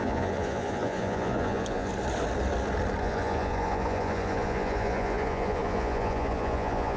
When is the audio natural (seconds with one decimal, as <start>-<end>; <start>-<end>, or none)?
1.9-3.0